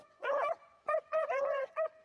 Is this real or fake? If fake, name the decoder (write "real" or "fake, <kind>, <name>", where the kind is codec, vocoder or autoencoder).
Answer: fake, vocoder, Vocos